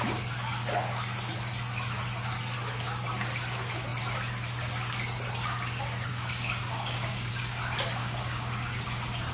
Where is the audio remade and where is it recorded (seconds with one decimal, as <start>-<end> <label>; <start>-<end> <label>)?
0.0-6.1 recorded; 6.1-7.3 remade; 7.3-8.0 recorded; 8.0-8.8 remade; 8.8-9.3 recorded